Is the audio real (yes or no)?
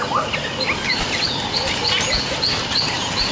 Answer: yes